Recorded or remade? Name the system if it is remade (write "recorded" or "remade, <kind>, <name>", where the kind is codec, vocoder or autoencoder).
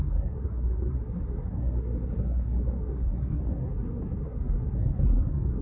remade, codec, SNAC